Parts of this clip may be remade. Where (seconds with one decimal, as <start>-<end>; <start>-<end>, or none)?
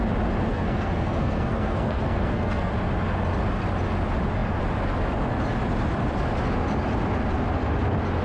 0.5-2.7